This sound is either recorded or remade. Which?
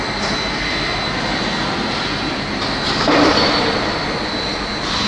recorded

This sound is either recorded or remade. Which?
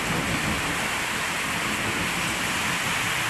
recorded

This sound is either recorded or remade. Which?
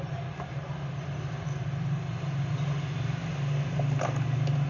recorded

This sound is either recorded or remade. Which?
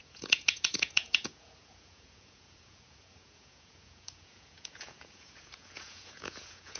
remade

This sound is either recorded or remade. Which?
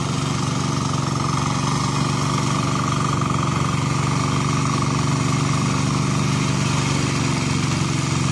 recorded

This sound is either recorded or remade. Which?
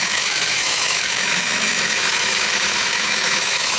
remade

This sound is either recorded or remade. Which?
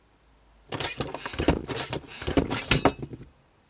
recorded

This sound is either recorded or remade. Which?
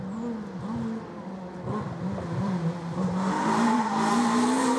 recorded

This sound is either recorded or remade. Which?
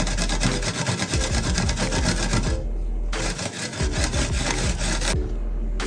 recorded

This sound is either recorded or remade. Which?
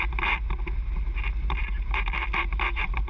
recorded